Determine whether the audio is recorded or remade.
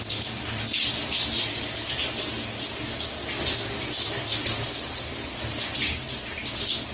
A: recorded